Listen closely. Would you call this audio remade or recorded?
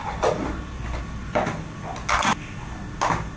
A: recorded